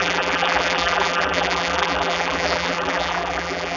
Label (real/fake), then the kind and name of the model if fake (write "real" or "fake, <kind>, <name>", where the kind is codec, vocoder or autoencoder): fake, vocoder, BigVGAN v2